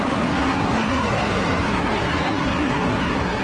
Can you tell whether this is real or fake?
fake